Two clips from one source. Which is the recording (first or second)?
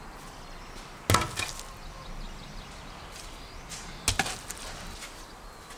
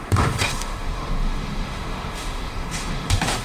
first